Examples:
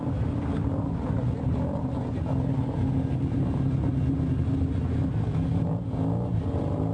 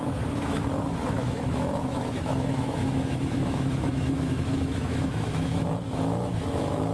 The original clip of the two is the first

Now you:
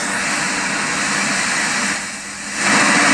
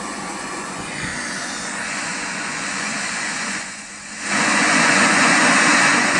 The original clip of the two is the first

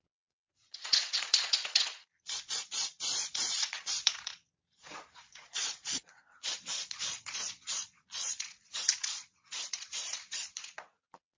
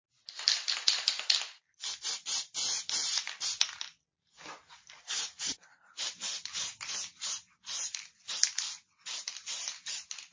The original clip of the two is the second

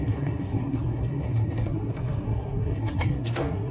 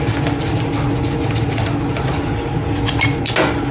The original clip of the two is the second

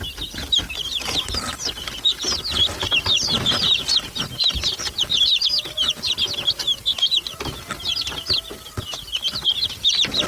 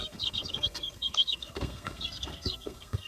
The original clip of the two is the first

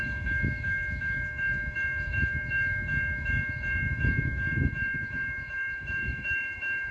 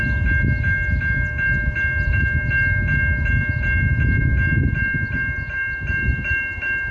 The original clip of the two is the second